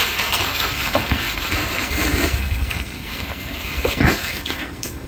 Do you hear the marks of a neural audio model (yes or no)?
yes